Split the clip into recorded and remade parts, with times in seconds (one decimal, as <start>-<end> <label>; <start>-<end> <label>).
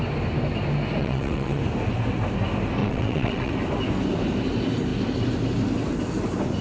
0.0-1.0 recorded; 1.0-1.6 remade; 1.6-2.8 recorded; 2.8-3.5 remade; 3.5-6.6 recorded